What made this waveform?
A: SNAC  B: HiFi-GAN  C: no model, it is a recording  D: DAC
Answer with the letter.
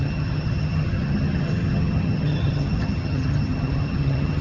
B